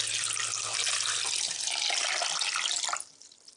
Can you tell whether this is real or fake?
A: real